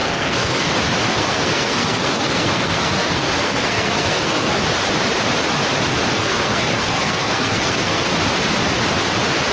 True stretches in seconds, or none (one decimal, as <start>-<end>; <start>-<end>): 0.7-1.1; 4.6-6.1; 8.1-9.5